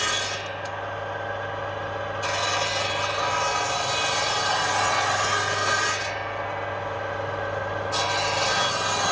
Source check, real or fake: real